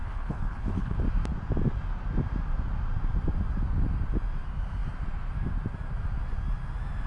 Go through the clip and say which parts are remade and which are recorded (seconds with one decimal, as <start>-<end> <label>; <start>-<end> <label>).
0.0-1.0 remade; 1.0-7.1 recorded

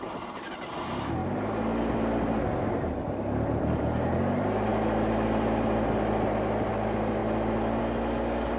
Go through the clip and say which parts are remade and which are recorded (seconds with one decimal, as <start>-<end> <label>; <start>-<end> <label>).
0.0-4.7 recorded; 4.7-6.7 remade; 6.7-8.6 recorded